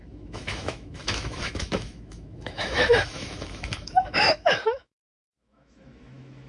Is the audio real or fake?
fake